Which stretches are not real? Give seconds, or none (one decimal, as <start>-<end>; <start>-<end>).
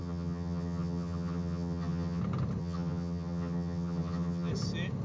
0.0-2.2; 2.6-4.5